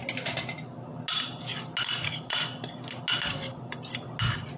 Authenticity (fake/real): real